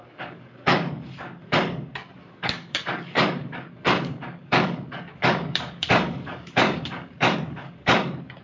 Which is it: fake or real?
fake